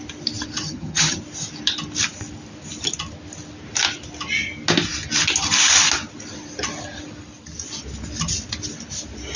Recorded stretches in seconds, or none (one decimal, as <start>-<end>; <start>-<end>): 0.0-0.6; 1.2-9.4